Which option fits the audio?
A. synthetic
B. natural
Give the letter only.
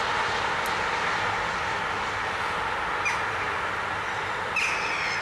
B